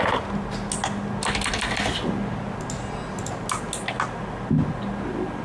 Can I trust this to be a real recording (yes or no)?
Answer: yes